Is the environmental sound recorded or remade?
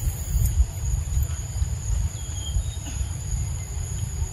remade